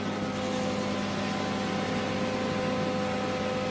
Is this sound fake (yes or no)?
no